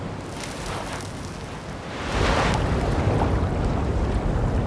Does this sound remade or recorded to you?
recorded